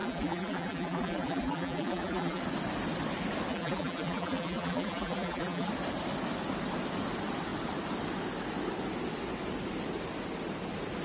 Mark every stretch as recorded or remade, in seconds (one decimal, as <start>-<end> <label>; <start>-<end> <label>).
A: 0.0-2.4 remade; 2.4-3.5 recorded; 3.5-5.7 remade; 5.7-11.0 recorded